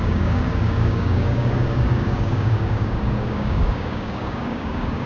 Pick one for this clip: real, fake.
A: fake